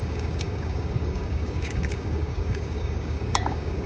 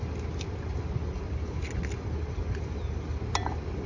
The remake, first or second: first